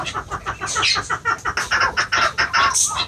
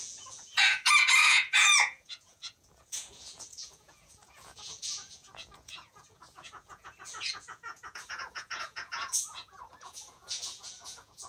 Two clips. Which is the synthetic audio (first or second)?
second